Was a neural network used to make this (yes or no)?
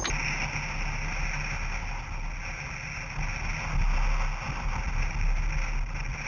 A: no